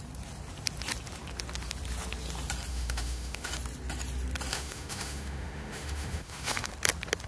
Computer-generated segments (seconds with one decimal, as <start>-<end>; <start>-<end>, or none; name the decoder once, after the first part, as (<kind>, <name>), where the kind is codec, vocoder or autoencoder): 2.7-3.5 (autoencoder, DAC-VAE); 4.5-6.7